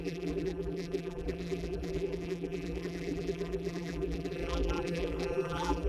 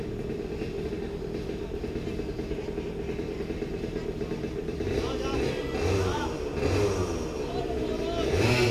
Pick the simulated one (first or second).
first